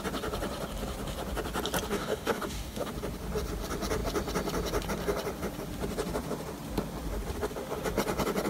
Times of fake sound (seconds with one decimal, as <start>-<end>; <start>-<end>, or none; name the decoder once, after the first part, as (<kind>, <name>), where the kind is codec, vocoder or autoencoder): 1.9-2.9 (codec, DAC)